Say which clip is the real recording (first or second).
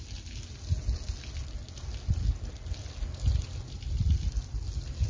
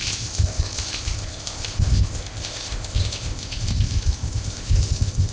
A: first